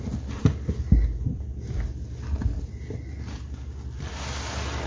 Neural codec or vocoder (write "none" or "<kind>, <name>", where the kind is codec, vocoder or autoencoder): none